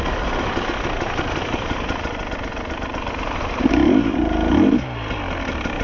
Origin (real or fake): real